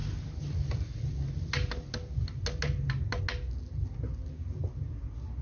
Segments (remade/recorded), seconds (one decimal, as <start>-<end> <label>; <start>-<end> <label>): 0.0-5.4 recorded